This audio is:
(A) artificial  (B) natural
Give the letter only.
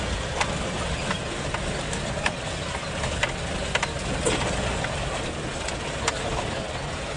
B